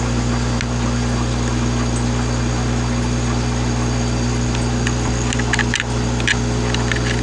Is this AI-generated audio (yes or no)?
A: no